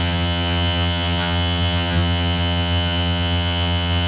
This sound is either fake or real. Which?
fake